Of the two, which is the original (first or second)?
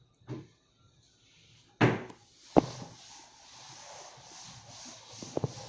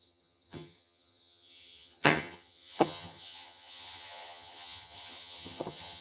first